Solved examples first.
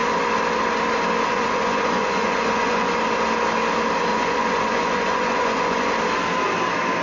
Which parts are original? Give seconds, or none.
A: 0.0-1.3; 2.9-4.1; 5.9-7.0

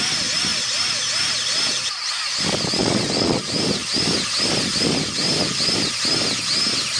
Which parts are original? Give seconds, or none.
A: 0.0-2.8; 3.4-7.0